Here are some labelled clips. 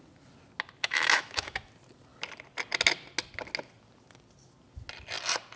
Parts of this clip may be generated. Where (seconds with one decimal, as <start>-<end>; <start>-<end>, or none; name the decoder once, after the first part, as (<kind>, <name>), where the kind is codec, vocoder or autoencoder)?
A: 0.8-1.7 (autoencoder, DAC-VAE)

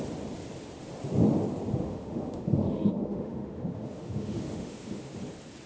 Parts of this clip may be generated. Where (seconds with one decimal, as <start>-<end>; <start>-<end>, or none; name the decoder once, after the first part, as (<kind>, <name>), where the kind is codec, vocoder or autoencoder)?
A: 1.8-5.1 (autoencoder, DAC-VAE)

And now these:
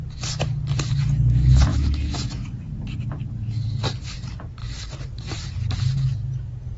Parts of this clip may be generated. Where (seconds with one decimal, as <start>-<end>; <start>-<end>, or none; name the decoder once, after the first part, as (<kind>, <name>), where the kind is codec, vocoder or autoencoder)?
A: 1.7-2.4 (autoencoder, DAC-VAE)

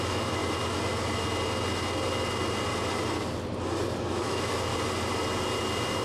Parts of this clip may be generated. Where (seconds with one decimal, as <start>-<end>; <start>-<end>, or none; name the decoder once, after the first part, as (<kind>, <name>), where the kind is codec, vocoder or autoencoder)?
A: 0.0-0.4 (autoencoder, DAC-VAE); 4.0-4.7

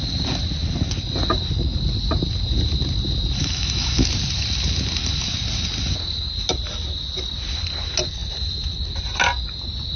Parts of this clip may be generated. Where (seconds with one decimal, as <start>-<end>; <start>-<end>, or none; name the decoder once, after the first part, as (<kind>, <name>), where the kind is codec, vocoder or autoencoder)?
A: 3.4-4.1 (autoencoder, DAC-VAE)